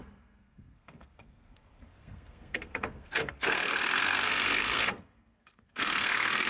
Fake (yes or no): yes